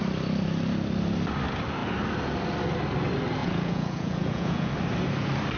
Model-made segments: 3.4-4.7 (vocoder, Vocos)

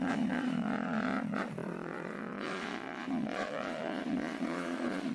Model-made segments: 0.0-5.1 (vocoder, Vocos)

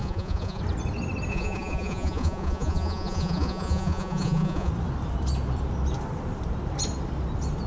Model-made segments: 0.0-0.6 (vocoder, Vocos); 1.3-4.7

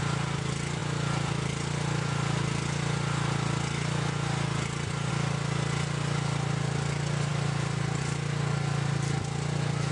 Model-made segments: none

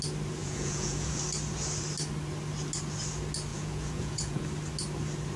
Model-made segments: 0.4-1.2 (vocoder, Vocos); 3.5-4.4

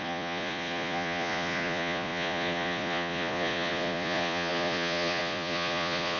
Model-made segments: 0.0-6.2 (vocoder, Vocos)

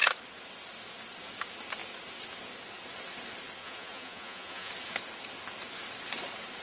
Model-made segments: 3.6-4.7 (vocoder, Vocos)

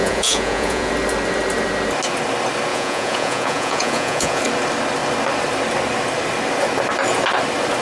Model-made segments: 0.0-0.9 (vocoder, Vocos); 2.7-4.4